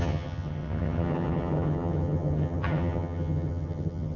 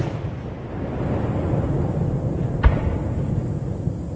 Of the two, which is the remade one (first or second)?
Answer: first